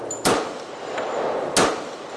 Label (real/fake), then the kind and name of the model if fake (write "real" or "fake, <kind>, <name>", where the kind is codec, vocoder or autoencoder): real